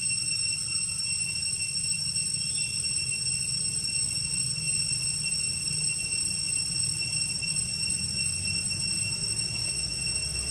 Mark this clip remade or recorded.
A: recorded